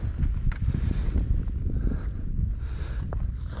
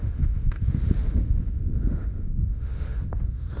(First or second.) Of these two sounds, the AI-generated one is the second